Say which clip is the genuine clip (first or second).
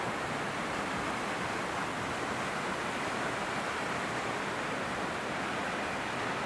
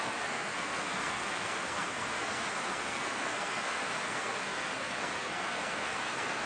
first